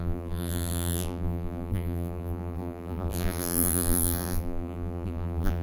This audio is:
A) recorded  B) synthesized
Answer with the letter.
B